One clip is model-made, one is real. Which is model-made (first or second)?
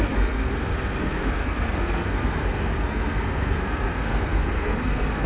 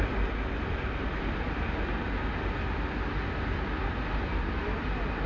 first